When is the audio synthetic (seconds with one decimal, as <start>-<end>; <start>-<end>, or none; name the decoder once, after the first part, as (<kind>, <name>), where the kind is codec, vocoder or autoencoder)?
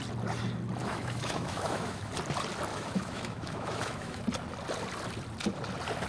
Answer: 0.8-2.1 (autoencoder, DAC-VAE); 2.7-4.2